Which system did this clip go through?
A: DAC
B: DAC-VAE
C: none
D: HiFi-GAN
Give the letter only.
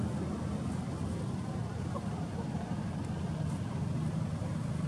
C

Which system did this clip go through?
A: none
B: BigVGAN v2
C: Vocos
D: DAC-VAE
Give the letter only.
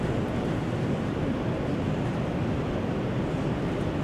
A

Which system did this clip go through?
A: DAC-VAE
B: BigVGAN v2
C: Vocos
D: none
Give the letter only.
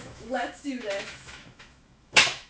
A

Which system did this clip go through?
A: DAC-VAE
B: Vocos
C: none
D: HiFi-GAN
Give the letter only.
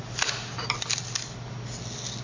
C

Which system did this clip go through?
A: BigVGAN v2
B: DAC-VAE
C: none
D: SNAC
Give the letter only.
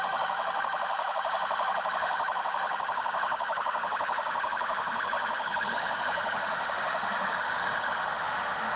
B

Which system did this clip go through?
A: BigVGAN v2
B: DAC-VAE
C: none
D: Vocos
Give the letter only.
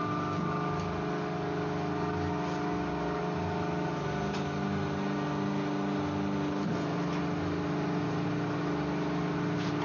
C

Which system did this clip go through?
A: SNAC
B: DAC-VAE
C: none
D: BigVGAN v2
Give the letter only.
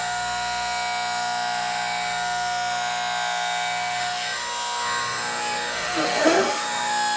B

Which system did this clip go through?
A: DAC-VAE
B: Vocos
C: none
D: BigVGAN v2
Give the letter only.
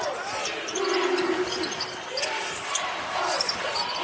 C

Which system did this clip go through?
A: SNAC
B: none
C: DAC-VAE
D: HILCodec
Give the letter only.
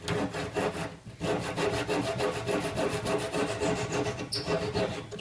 B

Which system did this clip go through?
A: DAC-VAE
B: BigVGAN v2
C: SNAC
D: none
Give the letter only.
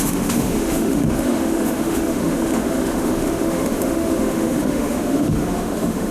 A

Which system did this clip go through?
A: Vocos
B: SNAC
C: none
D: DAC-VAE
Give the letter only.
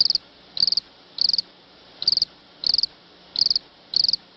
C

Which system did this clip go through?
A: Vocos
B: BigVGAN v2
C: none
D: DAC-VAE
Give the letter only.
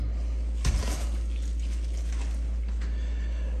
C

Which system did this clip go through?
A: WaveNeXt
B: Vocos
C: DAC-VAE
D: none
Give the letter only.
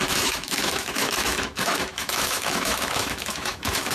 C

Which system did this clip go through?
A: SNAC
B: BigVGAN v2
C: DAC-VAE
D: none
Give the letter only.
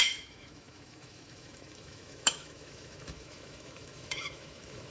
C